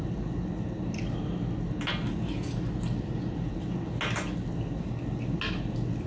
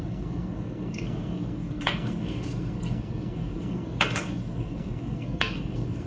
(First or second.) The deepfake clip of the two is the second